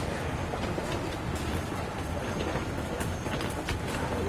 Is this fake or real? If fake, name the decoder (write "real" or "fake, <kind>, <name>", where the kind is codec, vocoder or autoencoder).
real